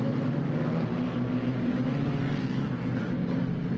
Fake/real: real